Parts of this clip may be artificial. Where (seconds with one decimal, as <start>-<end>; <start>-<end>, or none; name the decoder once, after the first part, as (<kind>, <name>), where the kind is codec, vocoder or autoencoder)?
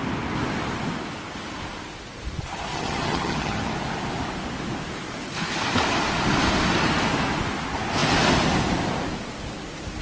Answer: 2.7-3.7 (vocoder, HiFi-GAN)